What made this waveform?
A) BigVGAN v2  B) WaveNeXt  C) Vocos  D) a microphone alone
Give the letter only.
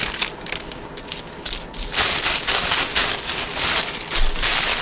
D